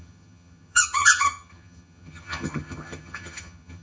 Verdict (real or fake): fake